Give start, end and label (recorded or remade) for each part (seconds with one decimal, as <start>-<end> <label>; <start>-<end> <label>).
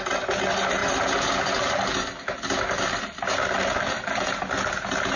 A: 0.0-5.2 recorded